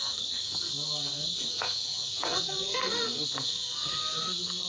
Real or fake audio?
fake